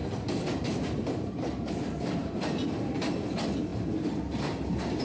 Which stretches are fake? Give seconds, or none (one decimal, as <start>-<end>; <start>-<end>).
none